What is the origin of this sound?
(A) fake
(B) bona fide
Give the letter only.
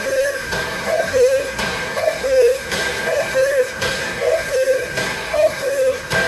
A